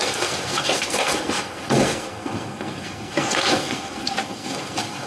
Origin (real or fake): fake